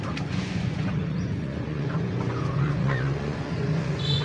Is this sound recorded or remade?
remade